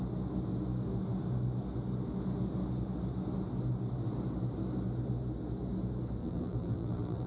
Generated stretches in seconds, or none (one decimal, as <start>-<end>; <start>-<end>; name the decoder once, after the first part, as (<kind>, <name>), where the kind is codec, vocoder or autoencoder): 6.2-7.3 (vocoder, BigVGAN v2)